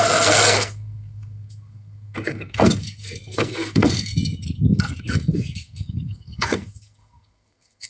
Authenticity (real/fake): fake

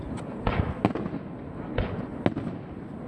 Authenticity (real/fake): real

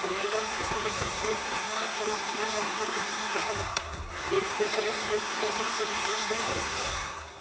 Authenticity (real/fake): fake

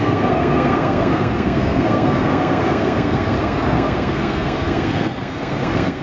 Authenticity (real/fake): fake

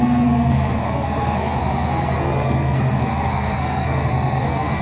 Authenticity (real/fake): fake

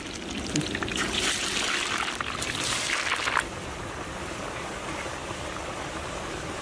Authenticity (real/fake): real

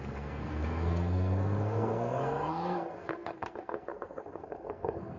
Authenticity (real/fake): fake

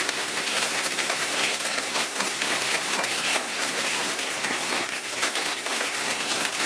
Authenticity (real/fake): fake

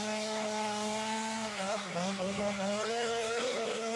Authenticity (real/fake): fake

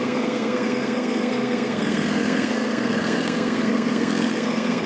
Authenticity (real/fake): fake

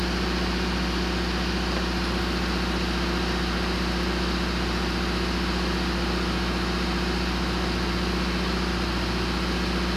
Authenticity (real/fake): real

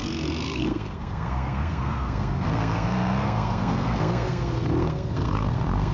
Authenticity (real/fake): fake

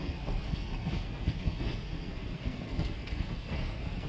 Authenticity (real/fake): fake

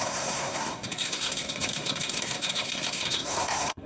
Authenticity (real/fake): fake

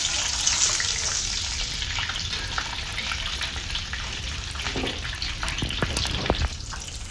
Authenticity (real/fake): real